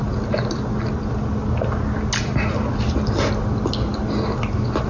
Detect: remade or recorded recorded